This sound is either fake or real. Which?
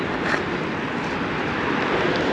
real